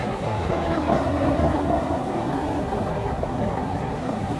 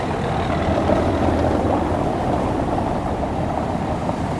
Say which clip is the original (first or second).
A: second